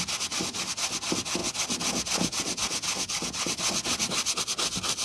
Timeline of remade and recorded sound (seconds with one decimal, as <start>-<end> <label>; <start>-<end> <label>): 0.0-5.0 recorded

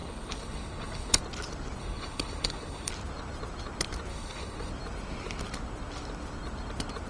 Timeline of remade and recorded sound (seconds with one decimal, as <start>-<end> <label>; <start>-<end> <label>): 0.0-1.2 remade; 1.2-1.8 recorded; 1.8-2.9 remade; 2.9-4.1 recorded; 4.1-4.7 remade; 4.7-7.1 recorded

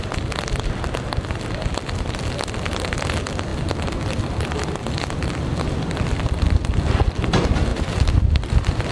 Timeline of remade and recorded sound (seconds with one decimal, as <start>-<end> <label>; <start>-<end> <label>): 0.0-8.9 recorded

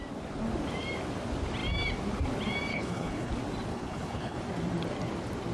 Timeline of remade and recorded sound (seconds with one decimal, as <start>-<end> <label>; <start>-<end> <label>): 0.0-2.7 recorded; 2.7-3.3 remade; 3.3-3.7 recorded; 3.7-4.4 remade; 4.4-5.5 recorded

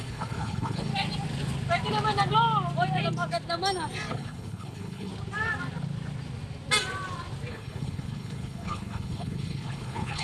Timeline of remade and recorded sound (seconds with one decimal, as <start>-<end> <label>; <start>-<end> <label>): 0.0-0.9 remade; 0.9-4.1 recorded; 4.1-5.1 remade; 5.1-7.5 recorded; 7.5-10.2 remade

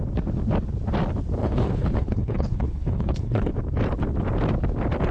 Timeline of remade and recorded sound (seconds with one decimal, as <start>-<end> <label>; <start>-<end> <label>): 0.0-1.4 recorded; 1.4-3.5 remade; 3.5-5.1 recorded

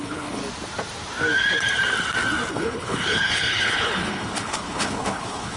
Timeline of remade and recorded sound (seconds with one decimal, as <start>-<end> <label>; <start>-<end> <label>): 0.0-0.4 remade; 0.4-2.5 recorded; 2.5-5.6 remade